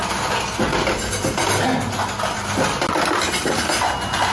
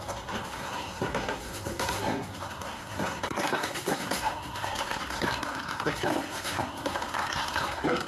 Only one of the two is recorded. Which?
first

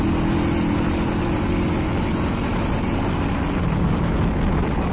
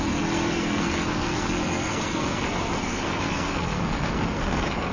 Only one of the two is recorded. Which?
first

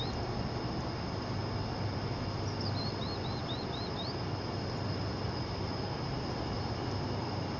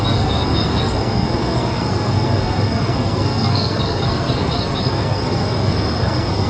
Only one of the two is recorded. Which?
first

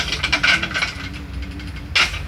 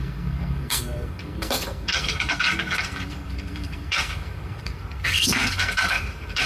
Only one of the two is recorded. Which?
first